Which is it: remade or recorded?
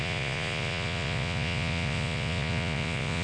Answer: remade